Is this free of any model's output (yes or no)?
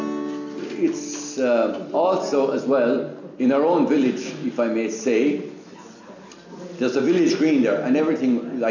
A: yes